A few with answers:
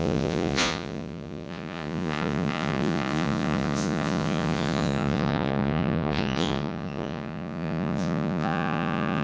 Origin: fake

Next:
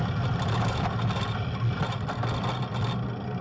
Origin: real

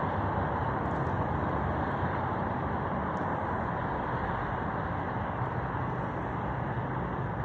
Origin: real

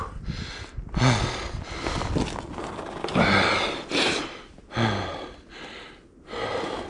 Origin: real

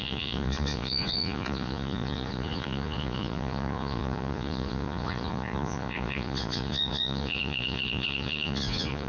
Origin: fake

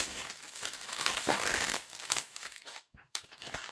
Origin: fake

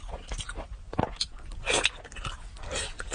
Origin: real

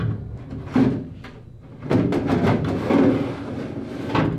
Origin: real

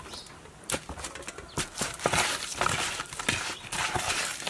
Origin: real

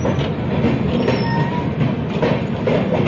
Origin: real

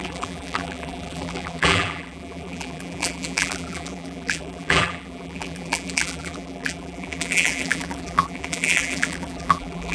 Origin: fake